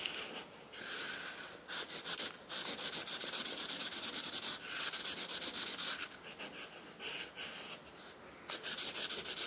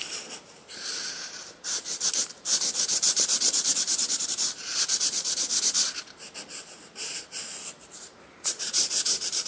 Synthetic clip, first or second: second